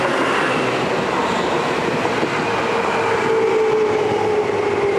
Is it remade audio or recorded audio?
recorded